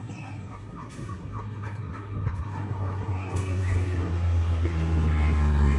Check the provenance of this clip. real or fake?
fake